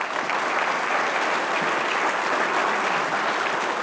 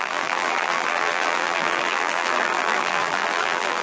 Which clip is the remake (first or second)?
second